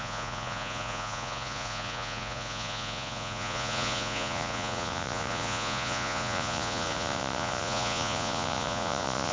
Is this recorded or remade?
remade